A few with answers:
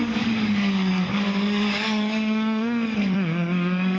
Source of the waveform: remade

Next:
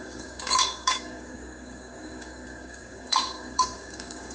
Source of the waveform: remade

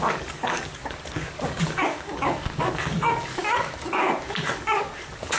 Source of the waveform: remade